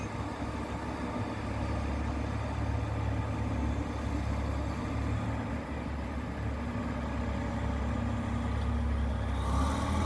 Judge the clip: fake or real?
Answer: real